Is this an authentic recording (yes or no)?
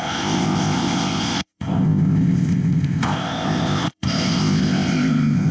no